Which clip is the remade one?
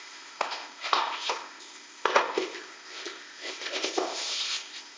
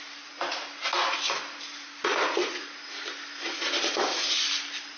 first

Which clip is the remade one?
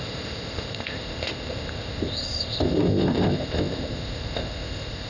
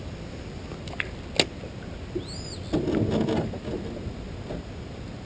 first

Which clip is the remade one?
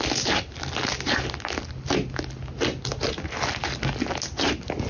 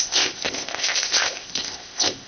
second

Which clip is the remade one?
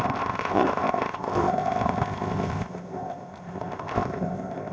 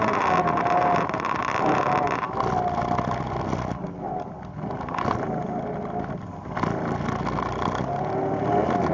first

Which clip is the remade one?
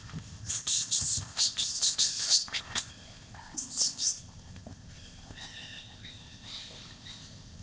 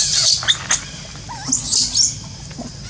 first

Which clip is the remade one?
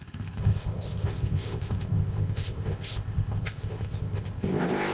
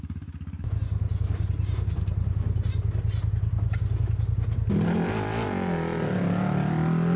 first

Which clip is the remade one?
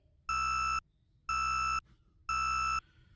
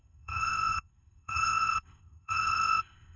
second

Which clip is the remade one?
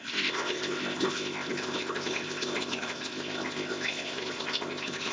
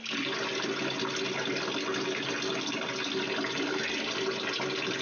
first